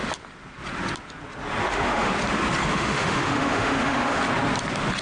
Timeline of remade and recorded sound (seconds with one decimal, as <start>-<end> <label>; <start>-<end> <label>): 0.0-1.6 recorded; 1.6-2.1 remade; 2.1-2.7 recorded; 2.7-4.2 remade; 4.2-5.0 recorded